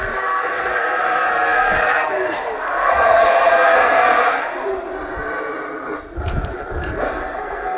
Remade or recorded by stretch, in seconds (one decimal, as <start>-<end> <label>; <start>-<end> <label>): 0.0-4.2 remade; 4.2-6.5 recorded; 6.5-7.8 remade